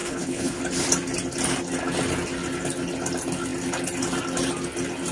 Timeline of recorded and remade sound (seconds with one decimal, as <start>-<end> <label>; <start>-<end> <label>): 0.0-0.6 remade; 0.6-5.1 recorded